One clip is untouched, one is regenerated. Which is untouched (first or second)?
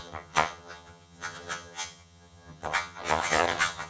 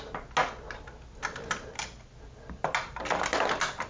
second